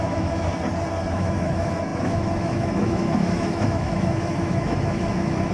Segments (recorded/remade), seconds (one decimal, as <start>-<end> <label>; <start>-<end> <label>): 0.0-0.5 remade; 0.5-1.1 recorded; 1.1-5.5 remade